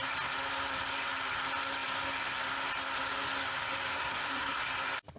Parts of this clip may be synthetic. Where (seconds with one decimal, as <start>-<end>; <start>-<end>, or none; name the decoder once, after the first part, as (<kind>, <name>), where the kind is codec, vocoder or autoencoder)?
3.9-4.6 (codec, SNAC)